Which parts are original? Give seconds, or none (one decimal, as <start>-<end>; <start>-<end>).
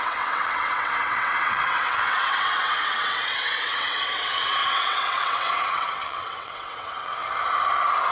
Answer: 7.2-8.1